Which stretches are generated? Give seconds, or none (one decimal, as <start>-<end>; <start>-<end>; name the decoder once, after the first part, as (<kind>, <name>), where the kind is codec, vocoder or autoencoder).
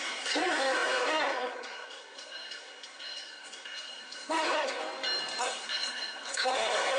0.0-4.8 (codec, SNAC); 5.4-7.0